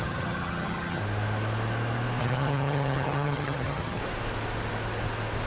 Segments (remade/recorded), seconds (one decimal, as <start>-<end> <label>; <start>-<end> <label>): 0.0-1.0 remade; 1.0-2.2 recorded; 2.2-4.0 remade; 4.0-5.5 recorded